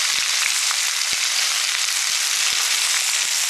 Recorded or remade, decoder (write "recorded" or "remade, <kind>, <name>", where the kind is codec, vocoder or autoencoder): recorded